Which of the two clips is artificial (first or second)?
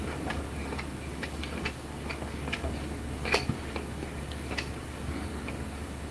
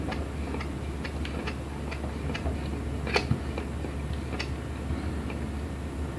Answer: first